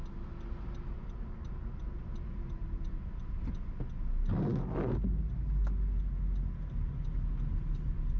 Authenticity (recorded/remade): recorded